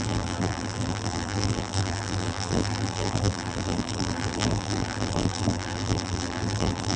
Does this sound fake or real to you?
fake